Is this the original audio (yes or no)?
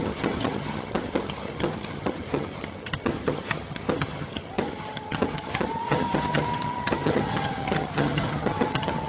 no